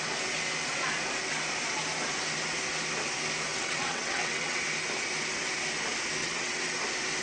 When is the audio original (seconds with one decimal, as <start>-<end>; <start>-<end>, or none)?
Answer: 0.0-3.5; 4.6-6.2; 6.8-7.2